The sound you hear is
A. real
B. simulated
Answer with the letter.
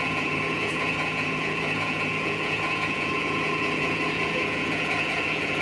B